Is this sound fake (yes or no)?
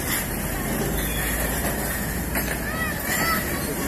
no